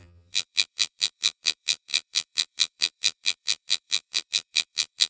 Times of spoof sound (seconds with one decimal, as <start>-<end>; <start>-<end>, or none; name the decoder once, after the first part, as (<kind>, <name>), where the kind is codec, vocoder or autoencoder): 0.0-5.1 (vocoder, BigVGAN v2)